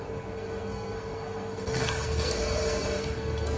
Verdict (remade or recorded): remade